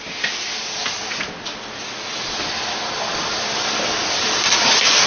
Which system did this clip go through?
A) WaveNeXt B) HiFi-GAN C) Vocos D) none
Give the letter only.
D